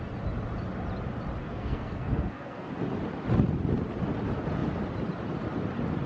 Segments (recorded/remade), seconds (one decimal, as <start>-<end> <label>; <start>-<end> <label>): 0.0-1.4 recorded; 1.4-2.7 remade; 2.7-6.1 recorded